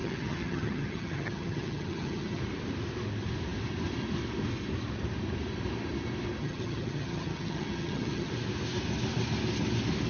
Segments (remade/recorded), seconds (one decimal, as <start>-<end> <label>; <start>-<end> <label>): 0.0-2.4 remade; 2.4-6.4 recorded; 6.4-8.3 remade; 8.3-10.1 recorded